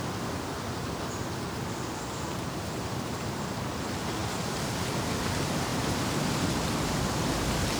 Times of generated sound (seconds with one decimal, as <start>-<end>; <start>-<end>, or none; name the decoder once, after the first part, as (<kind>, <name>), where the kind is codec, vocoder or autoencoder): none